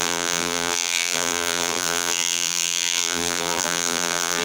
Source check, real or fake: fake